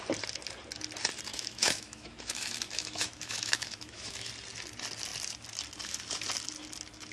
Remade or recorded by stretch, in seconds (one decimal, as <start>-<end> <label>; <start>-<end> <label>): 0.0-1.3 recorded; 1.3-4.3 remade; 4.3-7.1 recorded